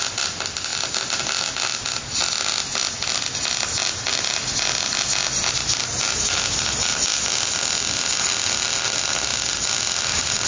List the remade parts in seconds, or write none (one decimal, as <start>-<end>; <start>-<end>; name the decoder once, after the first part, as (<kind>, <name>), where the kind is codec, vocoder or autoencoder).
none